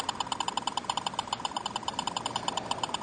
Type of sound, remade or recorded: recorded